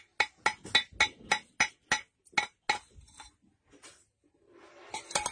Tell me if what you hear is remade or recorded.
recorded